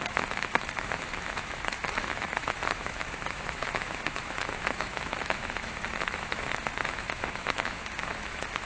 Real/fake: fake